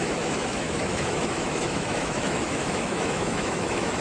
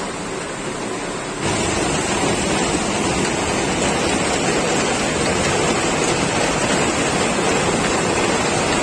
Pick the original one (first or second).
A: second